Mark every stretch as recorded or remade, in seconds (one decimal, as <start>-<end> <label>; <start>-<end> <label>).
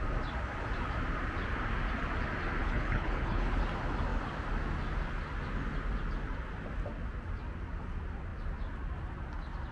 0.0-2.6 recorded; 2.6-3.6 remade; 3.6-9.7 recorded